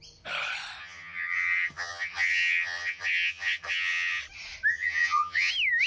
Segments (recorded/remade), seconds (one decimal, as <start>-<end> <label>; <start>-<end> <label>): 0.0-0.8 recorded; 0.8-4.2 remade; 4.2-4.7 recorded; 4.7-5.5 remade; 5.5-5.9 recorded